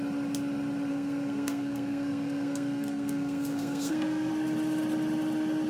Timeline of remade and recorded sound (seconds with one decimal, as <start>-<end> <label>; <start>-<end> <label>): 0.0-0.9 recorded; 0.9-4.3 remade; 4.3-5.7 recorded